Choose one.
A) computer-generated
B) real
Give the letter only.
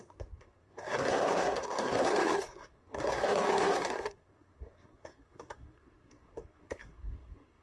A